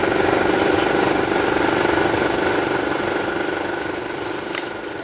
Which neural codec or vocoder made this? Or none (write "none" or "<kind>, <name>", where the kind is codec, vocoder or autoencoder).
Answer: none